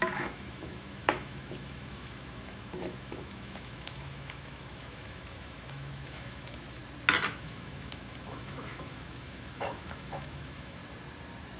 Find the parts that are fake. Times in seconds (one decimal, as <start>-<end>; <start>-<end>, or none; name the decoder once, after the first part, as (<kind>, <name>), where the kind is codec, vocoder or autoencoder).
0.0-6.8 (autoencoder, DAC-VAE); 7.3-10.8